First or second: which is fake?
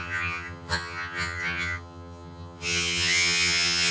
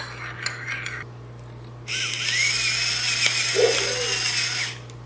first